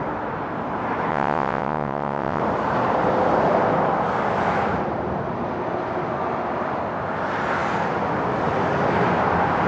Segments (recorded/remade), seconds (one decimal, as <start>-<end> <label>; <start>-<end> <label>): 0.0-1.1 recorded; 1.1-2.4 remade; 2.4-9.7 recorded

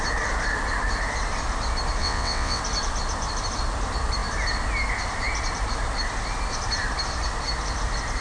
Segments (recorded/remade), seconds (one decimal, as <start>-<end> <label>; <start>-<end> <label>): 0.0-2.0 recorded; 2.0-2.6 remade; 2.6-8.2 recorded

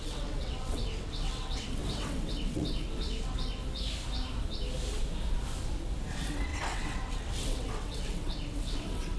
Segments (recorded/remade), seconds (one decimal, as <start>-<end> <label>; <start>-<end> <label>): 0.0-3.6 remade; 3.6-6.1 recorded; 6.1-9.2 remade

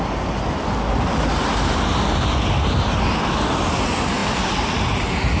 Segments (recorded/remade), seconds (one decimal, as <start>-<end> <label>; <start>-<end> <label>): 0.0-5.4 recorded

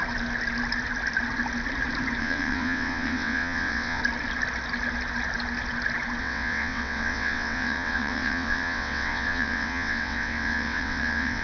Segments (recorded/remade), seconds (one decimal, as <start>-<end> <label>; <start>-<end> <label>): 0.0-2.2 recorded; 2.2-4.0 remade; 4.0-6.2 recorded; 6.2-11.4 remade